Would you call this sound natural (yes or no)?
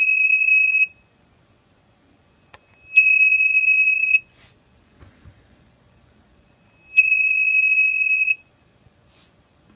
no